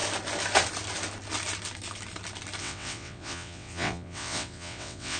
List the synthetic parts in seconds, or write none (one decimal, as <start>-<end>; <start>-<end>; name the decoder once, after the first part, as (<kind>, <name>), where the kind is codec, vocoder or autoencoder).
2.6-5.2 (vocoder, WaveNeXt)